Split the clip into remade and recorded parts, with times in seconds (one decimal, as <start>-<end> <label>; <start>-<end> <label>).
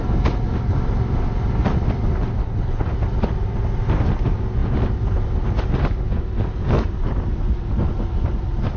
0.0-2.4 recorded; 2.4-2.9 remade; 2.9-8.8 recorded